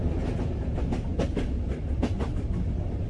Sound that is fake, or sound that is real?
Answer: real